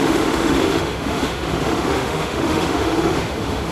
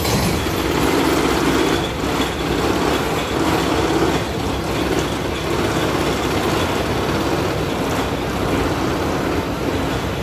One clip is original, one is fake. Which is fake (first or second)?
first